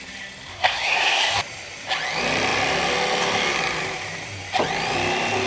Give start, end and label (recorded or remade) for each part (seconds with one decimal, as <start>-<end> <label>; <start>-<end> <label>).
0.0-0.5 recorded; 0.5-1.4 remade; 1.4-5.5 recorded